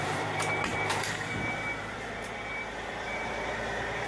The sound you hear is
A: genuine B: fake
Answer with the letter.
B